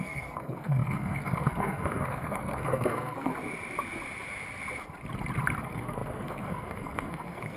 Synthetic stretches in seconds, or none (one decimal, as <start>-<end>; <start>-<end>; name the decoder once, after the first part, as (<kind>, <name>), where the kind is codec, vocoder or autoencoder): 0.0-3.3 (codec, SNAC); 5.6-7.6